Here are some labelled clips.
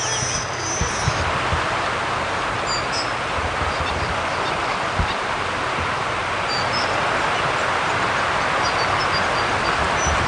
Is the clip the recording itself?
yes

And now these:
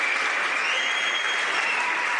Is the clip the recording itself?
yes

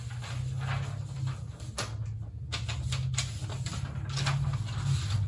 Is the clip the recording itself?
yes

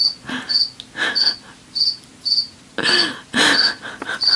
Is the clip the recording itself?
yes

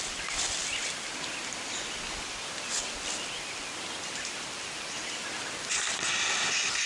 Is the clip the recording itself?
yes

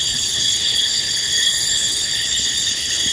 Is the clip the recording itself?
no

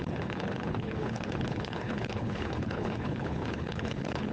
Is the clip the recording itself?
no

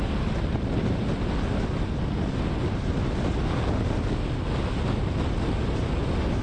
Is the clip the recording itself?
yes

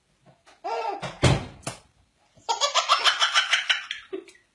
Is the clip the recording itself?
yes